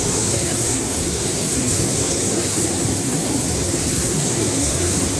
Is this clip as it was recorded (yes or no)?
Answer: no